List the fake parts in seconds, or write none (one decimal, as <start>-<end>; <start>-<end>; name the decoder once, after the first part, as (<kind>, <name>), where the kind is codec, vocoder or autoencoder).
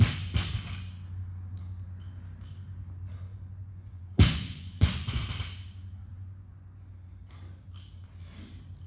3.3-5.2 (vocoder, Vocos); 6.1-6.9